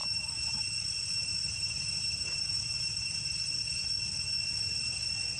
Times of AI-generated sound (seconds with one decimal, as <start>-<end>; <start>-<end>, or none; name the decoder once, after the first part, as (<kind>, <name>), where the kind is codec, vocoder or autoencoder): 1.3-3.5 (vocoder, BigVGAN v2)